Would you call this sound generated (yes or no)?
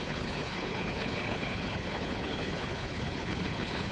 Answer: yes